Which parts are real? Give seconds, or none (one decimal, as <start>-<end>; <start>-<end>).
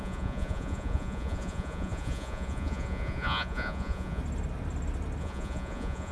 4.2-5.2